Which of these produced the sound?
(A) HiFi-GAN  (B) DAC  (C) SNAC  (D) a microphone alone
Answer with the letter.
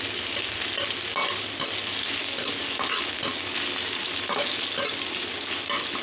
D